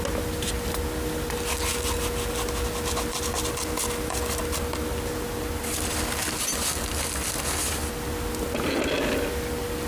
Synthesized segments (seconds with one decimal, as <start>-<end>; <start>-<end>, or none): none